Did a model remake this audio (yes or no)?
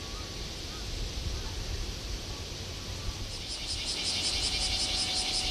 no